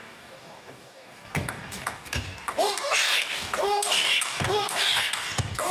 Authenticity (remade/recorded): remade